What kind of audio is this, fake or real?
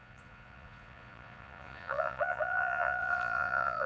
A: fake